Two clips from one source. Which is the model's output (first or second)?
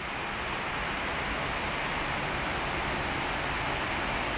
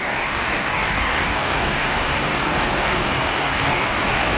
second